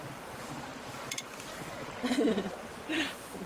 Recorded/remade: remade